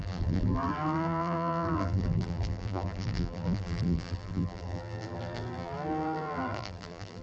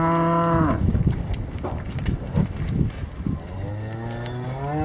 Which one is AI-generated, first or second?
first